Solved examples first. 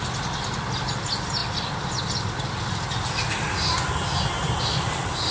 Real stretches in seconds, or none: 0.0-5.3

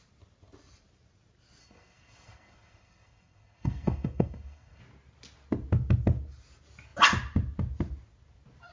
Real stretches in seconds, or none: 0.0-1.6; 4.8-8.7

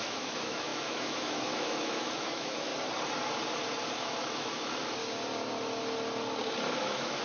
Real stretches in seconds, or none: 2.7-4.0; 5.0-6.8

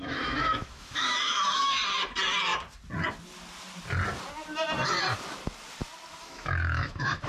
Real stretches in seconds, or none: 1.8-6.2